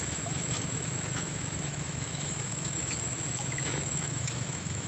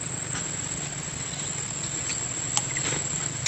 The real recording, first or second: second